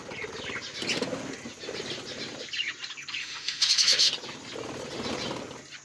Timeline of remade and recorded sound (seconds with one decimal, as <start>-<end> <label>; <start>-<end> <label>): 0.0-3.2 recorded; 3.2-4.1 remade; 4.1-5.8 recorded